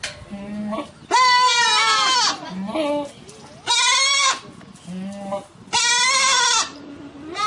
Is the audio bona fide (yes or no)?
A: yes